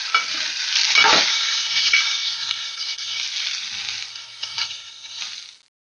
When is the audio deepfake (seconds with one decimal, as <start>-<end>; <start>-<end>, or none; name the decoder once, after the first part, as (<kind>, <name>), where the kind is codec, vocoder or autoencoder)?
1.3-3.2 (codec, SNAC); 4.1-5.2